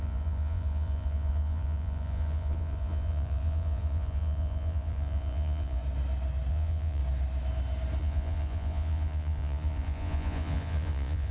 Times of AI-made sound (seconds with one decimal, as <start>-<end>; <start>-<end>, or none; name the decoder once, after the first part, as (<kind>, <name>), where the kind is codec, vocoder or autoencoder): 0.0-5.8 (vocoder, Vocos); 6.5-7.0; 8.0-11.3